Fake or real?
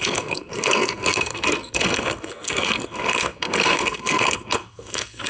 fake